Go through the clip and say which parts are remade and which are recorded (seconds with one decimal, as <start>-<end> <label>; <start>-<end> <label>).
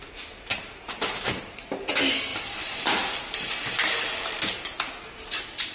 0.0-0.5 recorded; 0.5-1.4 remade; 1.4-2.3 recorded; 2.3-3.9 remade; 3.9-5.7 recorded